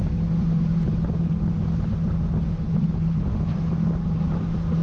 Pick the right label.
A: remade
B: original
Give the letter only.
B